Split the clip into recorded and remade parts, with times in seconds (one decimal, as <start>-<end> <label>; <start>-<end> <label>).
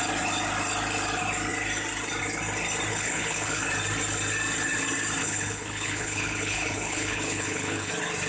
0.0-2.9 recorded; 2.9-3.6 remade; 3.6-5.2 recorded; 5.2-7.9 remade; 7.9-8.3 recorded